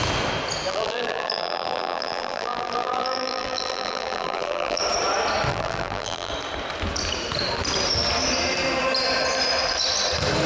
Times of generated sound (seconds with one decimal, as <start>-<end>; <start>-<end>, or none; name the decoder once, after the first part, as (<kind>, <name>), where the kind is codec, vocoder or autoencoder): 0.7-4.8 (vocoder, BigVGAN v2); 5.5-6.3